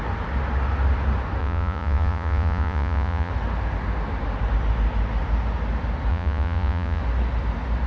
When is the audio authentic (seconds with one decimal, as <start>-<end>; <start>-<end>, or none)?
0.0-1.4; 3.3-6.1; 7.0-7.9